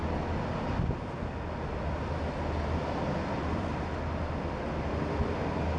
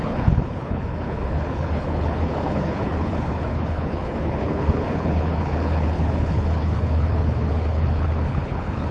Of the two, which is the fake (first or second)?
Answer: second